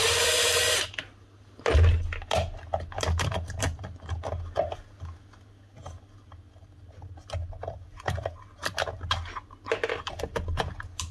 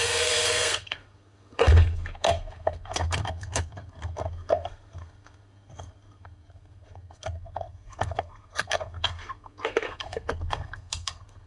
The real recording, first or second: first